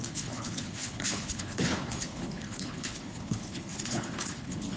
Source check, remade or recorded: remade